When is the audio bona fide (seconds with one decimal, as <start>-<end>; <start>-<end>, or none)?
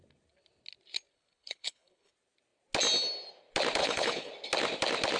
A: 0.0-1.1; 2.1-3.8; 4.3-5.2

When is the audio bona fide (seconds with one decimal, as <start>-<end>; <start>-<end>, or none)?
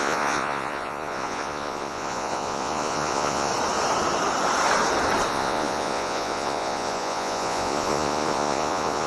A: 3.5-5.3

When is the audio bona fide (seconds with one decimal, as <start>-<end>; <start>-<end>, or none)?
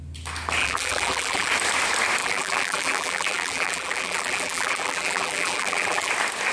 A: 0.0-0.6; 1.5-2.2; 6.1-6.5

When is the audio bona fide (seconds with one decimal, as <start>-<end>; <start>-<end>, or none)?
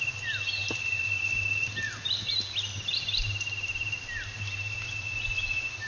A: 0.0-5.9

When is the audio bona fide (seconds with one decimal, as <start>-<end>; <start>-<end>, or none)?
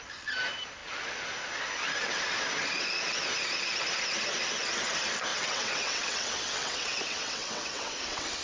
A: 0.0-5.3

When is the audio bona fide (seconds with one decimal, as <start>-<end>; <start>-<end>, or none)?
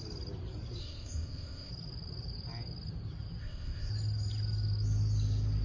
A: 0.0-0.8; 1.7-3.4; 3.9-5.6